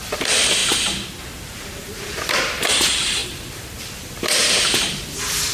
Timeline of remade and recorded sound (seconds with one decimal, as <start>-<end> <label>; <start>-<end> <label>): 0.0-0.6 remade; 0.6-1.8 recorded; 1.8-5.5 remade